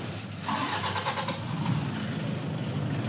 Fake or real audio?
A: real